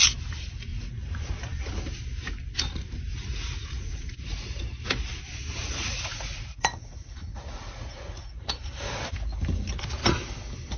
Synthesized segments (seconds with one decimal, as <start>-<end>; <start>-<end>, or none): 0.7-1.2; 3.1-4.6; 5.6-9.0